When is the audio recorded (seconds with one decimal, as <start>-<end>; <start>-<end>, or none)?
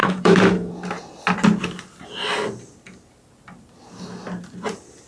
0.7-5.1